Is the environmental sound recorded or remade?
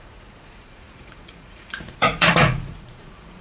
remade